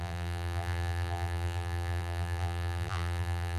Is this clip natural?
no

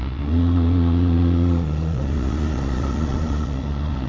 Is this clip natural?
no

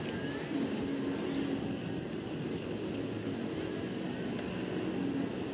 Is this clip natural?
yes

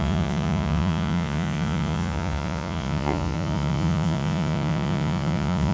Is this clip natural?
no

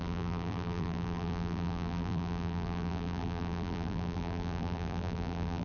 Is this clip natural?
no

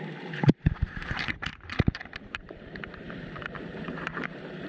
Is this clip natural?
no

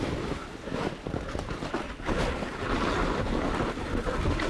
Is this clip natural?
yes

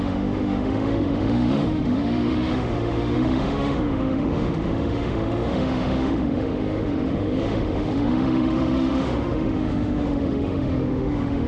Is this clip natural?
no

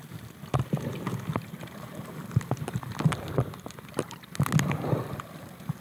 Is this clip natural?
yes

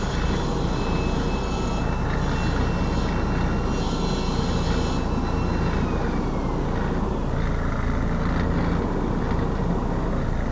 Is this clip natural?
yes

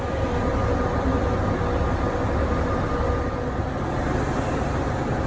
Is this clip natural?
yes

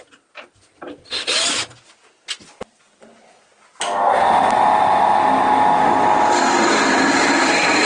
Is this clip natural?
yes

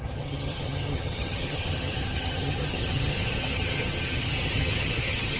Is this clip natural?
no